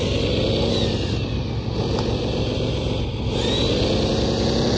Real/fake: real